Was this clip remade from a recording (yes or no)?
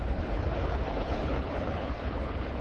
yes